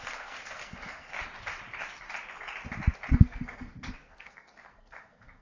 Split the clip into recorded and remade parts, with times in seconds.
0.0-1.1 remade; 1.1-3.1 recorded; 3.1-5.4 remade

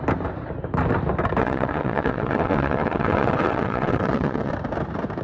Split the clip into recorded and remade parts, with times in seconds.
0.0-1.4 recorded; 1.4-4.5 remade; 4.5-5.2 recorded

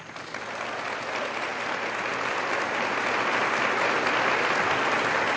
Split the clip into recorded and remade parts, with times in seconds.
0.0-1.5 remade; 1.5-4.7 recorded; 4.7-5.4 remade

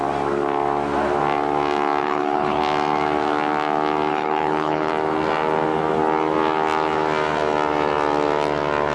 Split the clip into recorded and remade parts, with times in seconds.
0.0-2.0 recorded; 2.0-2.6 remade; 2.6-4.1 recorded; 4.1-4.9 remade; 4.9-8.9 recorded

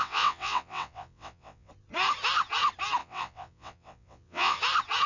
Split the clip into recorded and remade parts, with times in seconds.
0.0-1.7 remade; 1.7-3.0 recorded; 3.0-4.6 remade; 4.6-5.1 recorded

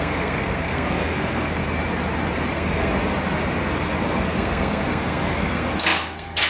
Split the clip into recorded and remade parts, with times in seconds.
0.0-1.6 remade; 1.6-2.5 recorded; 2.5-2.9 remade; 2.9-4.0 recorded; 4.0-6.5 remade